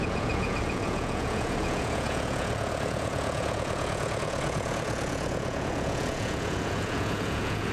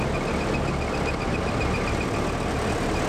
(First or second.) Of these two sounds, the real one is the second